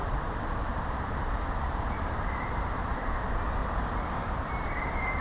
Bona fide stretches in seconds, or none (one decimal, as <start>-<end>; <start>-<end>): 3.1-3.6